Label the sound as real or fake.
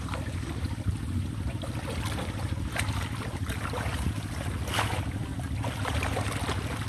real